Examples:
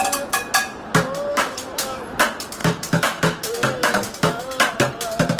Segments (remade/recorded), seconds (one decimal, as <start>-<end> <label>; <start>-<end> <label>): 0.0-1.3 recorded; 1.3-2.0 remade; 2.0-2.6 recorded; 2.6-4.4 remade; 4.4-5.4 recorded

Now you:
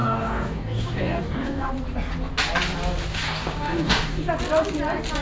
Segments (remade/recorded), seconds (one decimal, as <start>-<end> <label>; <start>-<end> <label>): 0.0-1.7 remade; 1.7-3.1 recorded; 3.1-4.3 remade; 4.3-5.2 recorded

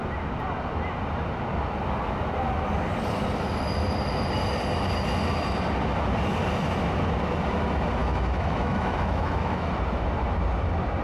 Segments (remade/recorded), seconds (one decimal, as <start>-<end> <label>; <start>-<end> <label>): 0.0-8.0 recorded; 8.0-9.7 remade; 9.7-11.0 recorded

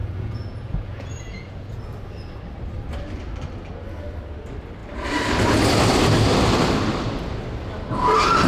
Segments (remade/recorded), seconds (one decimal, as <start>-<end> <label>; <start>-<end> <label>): 0.0-1.8 remade; 1.8-8.5 recorded